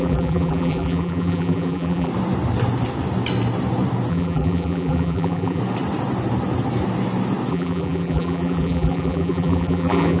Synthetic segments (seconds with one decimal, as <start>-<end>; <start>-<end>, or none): 0.0-2.1; 4.1-5.6; 7.5-10.2